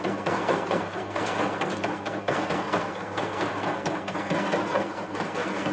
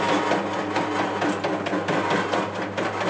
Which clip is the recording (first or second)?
second